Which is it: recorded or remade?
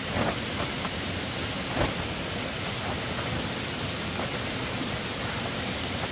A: recorded